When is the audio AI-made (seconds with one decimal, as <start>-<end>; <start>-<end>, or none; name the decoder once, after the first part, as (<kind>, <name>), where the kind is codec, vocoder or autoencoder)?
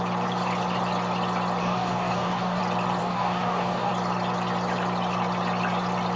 1.6-2.6 (codec, DAC); 3.0-3.9